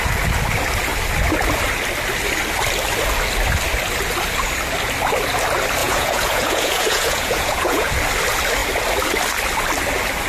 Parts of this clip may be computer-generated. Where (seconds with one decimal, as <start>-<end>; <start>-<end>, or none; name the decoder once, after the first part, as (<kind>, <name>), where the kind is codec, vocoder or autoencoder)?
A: 5.8-7.9 (vocoder, Vocos)